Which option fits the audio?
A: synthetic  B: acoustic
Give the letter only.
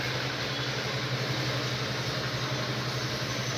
B